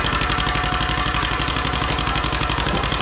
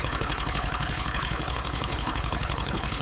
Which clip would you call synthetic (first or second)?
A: second